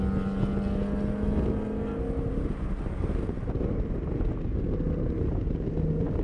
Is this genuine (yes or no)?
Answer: yes